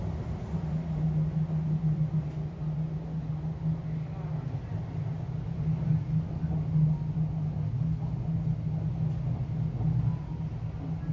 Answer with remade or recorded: recorded